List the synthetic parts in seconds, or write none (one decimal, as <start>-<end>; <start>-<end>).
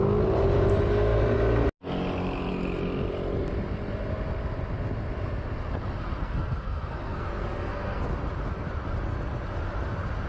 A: 6.2-8.0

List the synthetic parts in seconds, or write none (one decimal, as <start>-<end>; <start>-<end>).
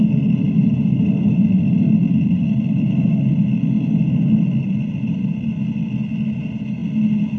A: none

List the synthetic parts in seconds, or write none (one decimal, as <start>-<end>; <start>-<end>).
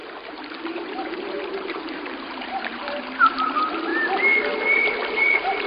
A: 0.0-3.9; 5.2-5.7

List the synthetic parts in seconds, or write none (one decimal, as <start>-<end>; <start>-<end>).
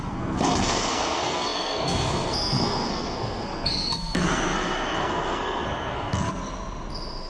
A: 0.0-6.4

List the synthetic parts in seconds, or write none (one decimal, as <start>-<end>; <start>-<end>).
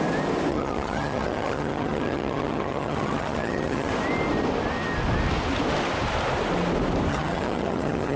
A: 0.5-3.9; 7.1-8.2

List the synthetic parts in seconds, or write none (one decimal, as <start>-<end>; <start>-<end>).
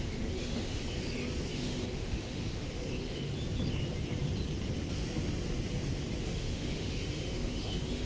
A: 0.0-0.8; 1.5-3.3; 6.2-8.1